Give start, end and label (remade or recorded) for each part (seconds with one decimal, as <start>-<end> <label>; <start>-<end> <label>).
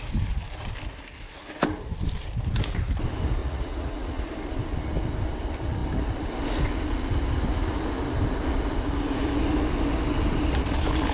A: 0.0-3.4 recorded; 3.4-4.3 remade; 4.3-11.1 recorded